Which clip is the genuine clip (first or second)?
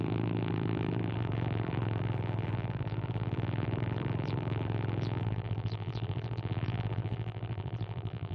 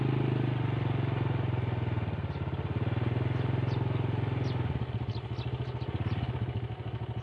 second